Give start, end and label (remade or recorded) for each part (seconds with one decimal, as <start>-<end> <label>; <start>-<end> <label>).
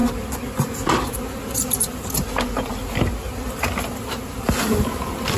0.0-5.4 recorded